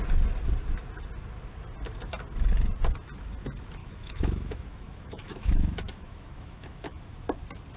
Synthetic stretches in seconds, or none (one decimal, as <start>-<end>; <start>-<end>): 3.8-7.0

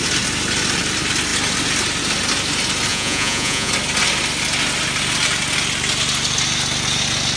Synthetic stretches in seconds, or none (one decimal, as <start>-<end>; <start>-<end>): 2.9-3.7

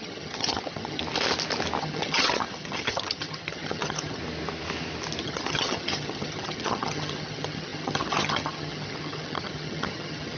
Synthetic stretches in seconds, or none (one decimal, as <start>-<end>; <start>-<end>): 0.0-1.0; 1.8-4.2; 5.2-10.4